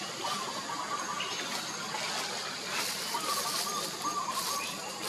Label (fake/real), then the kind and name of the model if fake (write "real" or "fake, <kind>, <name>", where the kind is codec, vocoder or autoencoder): real